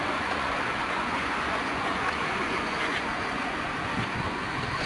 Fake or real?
fake